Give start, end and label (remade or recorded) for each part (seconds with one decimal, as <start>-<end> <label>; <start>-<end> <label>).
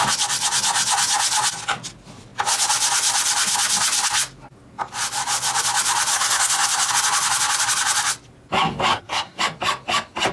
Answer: 0.0-6.1 recorded; 6.1-6.9 remade; 6.9-8.9 recorded; 8.9-9.4 remade; 9.4-10.3 recorded